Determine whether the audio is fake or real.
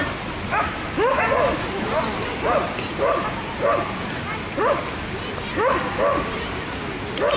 real